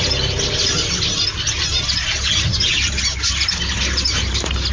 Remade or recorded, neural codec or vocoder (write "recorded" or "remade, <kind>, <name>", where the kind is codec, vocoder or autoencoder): recorded